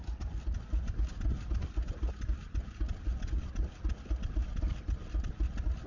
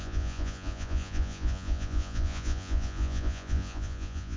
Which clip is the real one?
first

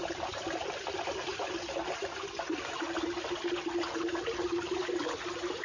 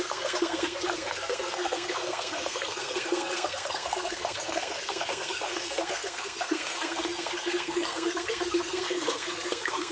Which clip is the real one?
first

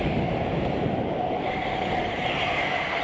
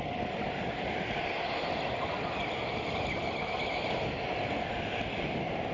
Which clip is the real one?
second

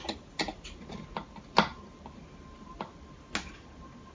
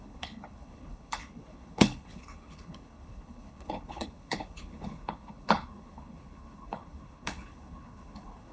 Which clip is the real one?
first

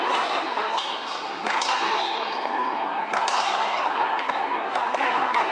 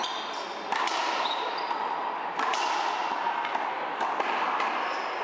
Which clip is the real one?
second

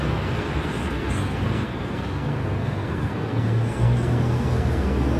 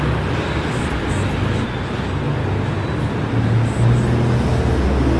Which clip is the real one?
second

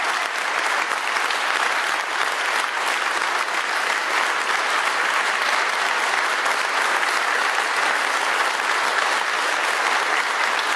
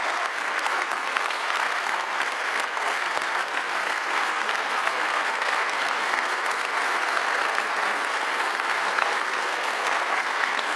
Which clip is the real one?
first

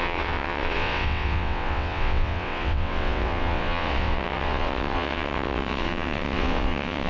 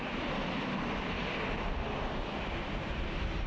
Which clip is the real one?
second